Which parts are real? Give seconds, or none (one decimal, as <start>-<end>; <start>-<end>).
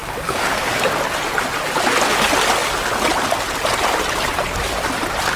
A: 0.9-5.4